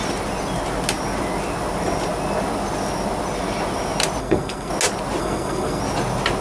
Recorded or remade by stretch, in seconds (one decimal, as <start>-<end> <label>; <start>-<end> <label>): 0.0-4.2 recorded; 4.2-4.7 remade; 4.7-5.2 recorded; 5.2-5.8 remade; 5.8-6.4 recorded